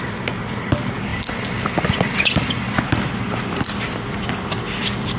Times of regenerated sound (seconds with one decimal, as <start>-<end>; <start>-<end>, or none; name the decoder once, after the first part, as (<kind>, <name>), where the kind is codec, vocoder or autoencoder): none